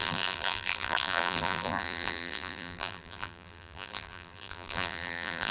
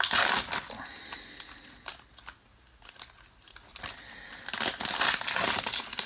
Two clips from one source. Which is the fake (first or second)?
first